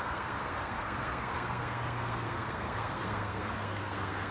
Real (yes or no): no